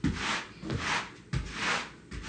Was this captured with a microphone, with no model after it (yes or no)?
yes